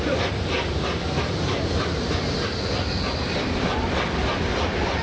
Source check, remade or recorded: recorded